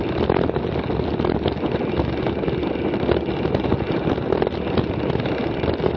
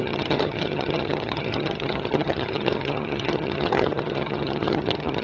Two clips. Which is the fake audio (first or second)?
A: second